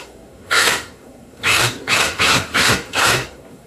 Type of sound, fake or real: fake